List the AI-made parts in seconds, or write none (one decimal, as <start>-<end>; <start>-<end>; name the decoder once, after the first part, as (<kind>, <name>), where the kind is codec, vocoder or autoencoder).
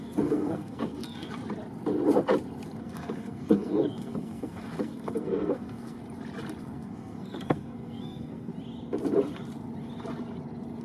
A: 0.0-1.4 (codec, SNAC); 2.8-6.0; 6.6-8.5